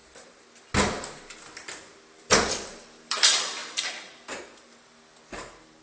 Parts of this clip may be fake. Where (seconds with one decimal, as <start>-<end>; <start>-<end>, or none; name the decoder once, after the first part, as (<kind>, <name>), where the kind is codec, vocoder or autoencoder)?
2.2-5.8 (vocoder, BigVGAN v2)